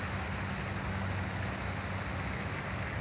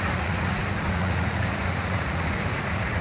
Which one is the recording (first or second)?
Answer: first